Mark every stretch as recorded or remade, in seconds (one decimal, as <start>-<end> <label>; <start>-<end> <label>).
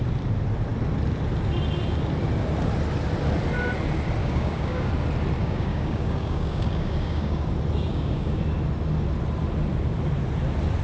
0.0-4.2 recorded; 4.2-4.9 remade; 4.9-5.4 recorded; 5.4-7.5 remade; 7.5-7.9 recorded; 7.9-8.4 remade; 8.4-10.8 recorded